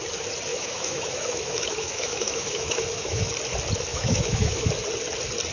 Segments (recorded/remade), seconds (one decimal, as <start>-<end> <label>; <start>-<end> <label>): 0.0-0.5 recorded; 0.5-3.3 remade; 3.3-3.9 recorded; 3.9-4.7 remade; 4.7-5.5 recorded